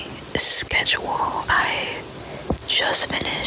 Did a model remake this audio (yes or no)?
no